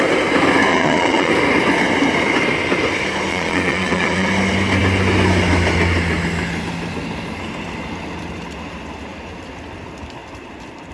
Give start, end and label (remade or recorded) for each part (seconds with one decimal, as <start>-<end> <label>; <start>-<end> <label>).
0.0-0.7 recorded; 0.7-1.3 remade; 1.3-3.3 recorded; 3.3-4.3 remade; 4.3-10.9 recorded